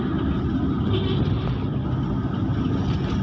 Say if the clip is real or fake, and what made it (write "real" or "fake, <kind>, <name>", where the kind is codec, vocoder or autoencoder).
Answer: real